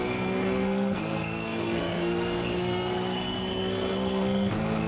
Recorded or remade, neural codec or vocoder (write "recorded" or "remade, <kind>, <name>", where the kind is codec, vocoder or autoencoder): remade, codec, SNAC